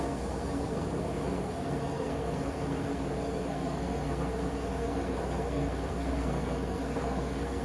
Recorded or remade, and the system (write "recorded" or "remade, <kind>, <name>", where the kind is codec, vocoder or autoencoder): remade, codec, SNAC